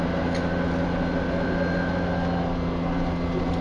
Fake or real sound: real